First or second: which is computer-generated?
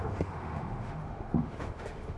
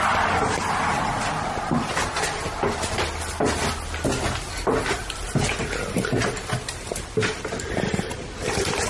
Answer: first